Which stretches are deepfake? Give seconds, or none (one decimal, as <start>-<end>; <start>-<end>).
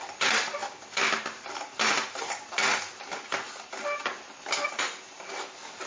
none